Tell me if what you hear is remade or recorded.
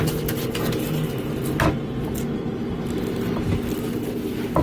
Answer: recorded